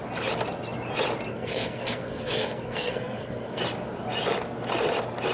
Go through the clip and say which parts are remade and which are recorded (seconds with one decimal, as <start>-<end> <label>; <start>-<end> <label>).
0.0-1.3 recorded; 1.3-3.6 remade; 3.6-5.3 recorded

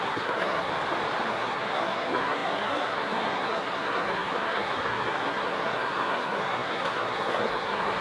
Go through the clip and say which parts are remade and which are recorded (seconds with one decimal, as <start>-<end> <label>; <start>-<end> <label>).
0.0-0.7 remade; 0.7-1.3 recorded; 1.3-8.0 remade

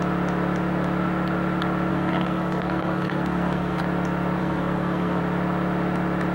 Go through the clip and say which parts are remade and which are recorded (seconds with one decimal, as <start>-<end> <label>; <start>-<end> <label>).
0.0-1.9 recorded; 1.9-3.8 remade; 3.8-4.4 recorded; 4.4-5.2 remade; 5.2-6.3 recorded

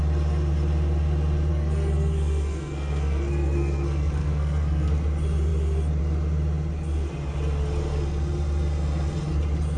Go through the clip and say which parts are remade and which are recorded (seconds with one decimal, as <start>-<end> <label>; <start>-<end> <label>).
0.0-1.5 recorded; 1.5-4.9 remade; 4.9-9.8 recorded

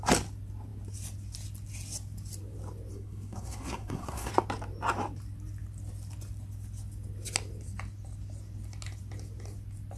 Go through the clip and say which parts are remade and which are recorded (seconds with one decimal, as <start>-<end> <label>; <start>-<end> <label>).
0.0-2.9 recorded; 2.9-4.3 remade; 4.3-10.0 recorded

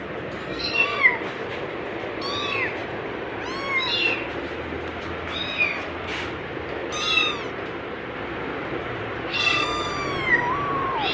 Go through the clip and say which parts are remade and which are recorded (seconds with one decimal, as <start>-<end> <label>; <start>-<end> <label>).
0.0-0.4 recorded; 0.4-1.0 remade; 1.0-9.3 recorded; 9.3-9.9 remade; 9.9-11.1 recorded

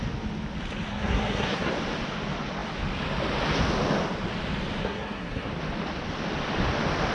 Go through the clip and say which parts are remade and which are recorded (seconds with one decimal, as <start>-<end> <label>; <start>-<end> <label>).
0.0-0.9 recorded; 0.9-1.7 remade; 1.7-4.8 recorded; 4.8-5.5 remade; 5.5-7.1 recorded